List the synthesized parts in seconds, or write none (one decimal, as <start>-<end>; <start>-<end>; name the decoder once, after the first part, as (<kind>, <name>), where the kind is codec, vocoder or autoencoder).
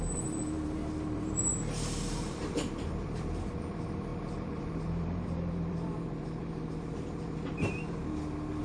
0.0-8.0 (vocoder, BigVGAN v2)